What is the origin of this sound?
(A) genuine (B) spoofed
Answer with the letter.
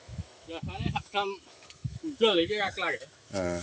B